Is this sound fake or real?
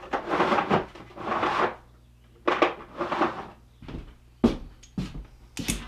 real